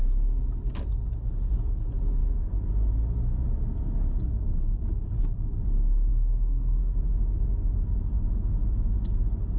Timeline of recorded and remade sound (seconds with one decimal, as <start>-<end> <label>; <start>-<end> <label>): 0.0-6.1 recorded; 6.1-7.0 remade; 7.0-9.6 recorded